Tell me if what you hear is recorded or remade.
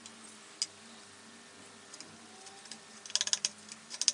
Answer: recorded